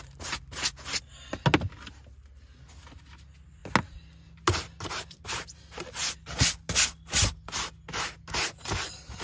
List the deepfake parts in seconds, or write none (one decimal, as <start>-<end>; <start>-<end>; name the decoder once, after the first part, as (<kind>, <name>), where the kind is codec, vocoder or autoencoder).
none

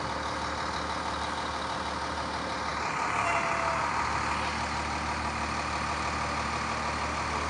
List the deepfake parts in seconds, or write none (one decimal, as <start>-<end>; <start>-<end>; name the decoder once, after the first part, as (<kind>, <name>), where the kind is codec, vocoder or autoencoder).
none

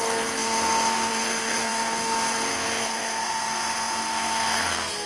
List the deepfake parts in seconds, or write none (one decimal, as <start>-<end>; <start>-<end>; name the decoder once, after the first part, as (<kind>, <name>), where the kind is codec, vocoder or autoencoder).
0.0-5.1 (codec, SNAC)

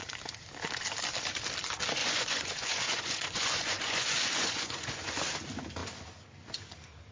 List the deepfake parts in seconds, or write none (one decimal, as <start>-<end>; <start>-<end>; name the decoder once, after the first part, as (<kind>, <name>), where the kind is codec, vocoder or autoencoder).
2.0-5.2 (vocoder, Vocos)

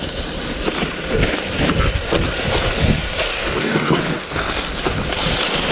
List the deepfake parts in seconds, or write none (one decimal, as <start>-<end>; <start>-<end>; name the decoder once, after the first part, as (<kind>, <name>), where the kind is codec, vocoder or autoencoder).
3.3-4.0 (codec, DAC)